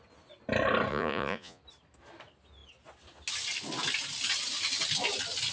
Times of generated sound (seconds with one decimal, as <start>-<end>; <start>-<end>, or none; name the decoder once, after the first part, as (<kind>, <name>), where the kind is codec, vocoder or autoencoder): 0.9-1.6 (vocoder, Vocos)